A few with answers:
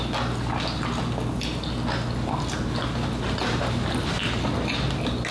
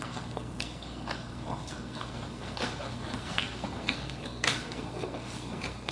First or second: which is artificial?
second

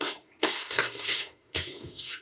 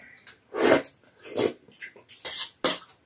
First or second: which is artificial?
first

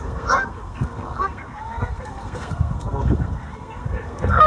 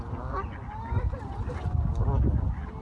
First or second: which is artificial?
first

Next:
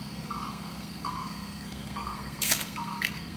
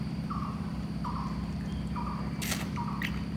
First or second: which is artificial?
first